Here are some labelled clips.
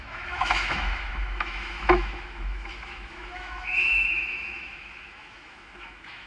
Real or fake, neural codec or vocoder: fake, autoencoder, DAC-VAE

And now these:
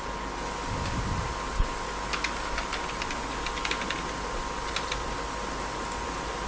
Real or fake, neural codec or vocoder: real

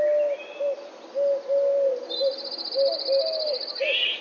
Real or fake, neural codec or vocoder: real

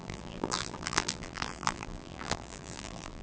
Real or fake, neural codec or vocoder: fake, vocoder, BigVGAN v2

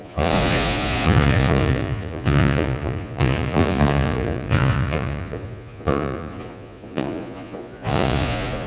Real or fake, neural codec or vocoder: fake, vocoder, Vocos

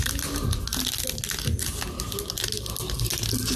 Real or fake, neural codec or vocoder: real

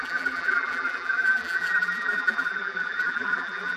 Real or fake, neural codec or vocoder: fake, vocoder, BigVGAN v2